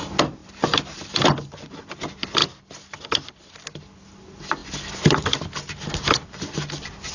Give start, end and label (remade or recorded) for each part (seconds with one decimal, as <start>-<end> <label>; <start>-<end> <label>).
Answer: 0.0-2.4 remade; 2.4-3.8 recorded; 3.8-7.1 remade